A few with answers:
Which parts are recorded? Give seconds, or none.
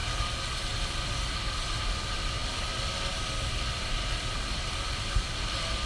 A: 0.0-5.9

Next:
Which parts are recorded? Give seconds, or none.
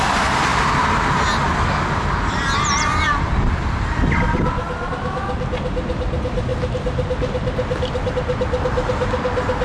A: 0.0-9.6